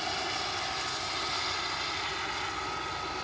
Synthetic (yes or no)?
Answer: no